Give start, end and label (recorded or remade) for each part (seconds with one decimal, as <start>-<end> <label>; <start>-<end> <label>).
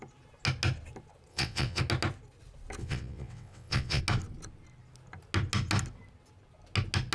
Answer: 0.0-1.3 recorded; 1.3-1.8 remade; 1.8-2.8 recorded; 2.8-4.0 remade; 4.0-7.1 recorded